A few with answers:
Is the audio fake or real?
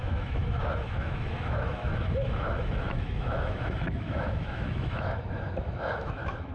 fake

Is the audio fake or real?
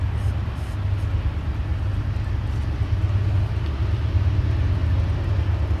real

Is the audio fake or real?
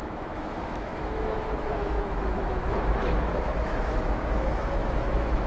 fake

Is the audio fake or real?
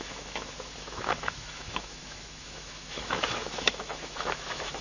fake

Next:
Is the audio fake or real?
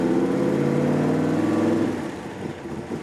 real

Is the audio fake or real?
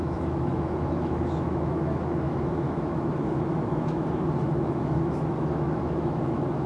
fake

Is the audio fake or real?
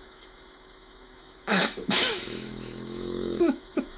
fake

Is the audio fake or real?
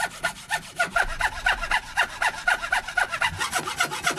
real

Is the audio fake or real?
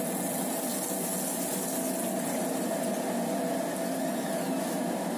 real